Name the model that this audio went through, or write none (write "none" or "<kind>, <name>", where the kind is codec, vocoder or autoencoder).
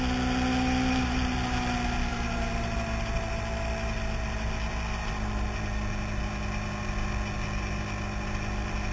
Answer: none